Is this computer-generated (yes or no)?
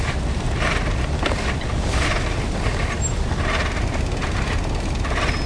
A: no